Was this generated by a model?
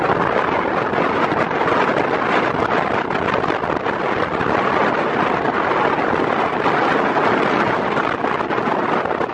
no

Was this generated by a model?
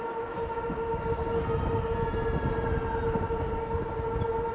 no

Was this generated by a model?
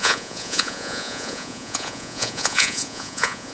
yes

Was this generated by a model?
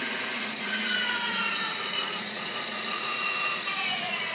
yes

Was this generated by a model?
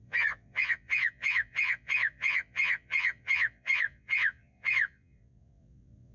yes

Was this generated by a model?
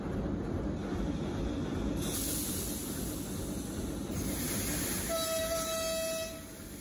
no